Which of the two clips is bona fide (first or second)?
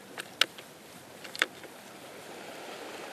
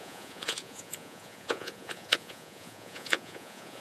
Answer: first